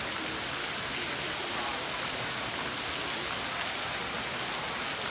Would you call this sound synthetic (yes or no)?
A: no